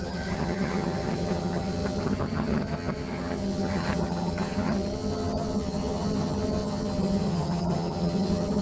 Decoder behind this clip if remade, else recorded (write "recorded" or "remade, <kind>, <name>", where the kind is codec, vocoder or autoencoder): remade, vocoder, HiFi-GAN